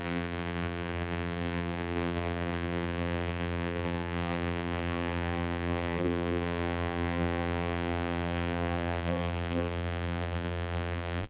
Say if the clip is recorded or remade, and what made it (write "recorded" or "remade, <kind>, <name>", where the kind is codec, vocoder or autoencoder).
remade, vocoder, BigVGAN v2